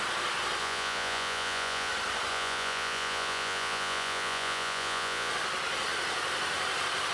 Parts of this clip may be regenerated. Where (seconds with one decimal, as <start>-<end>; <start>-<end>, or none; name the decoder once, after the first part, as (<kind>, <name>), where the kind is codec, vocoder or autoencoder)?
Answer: 0.6-1.9 (vocoder, Vocos); 2.3-5.3